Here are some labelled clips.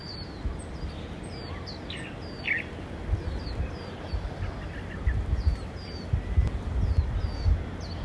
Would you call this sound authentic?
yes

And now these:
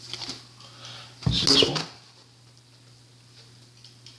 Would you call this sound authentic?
yes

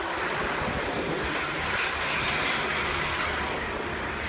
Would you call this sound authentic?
yes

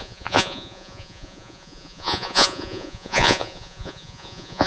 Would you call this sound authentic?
no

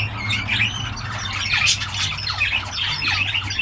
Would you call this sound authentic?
yes